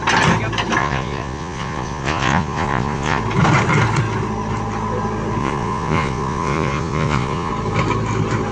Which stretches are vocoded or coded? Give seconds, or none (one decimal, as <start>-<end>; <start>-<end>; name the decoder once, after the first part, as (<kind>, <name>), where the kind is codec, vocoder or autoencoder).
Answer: 0.8-3.2 (vocoder, Vocos); 5.4-7.5